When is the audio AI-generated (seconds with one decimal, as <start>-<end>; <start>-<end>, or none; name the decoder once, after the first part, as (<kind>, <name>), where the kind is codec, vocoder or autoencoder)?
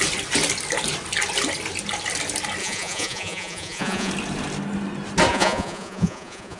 2.6-4.1 (vocoder, Vocos); 5.3-6.6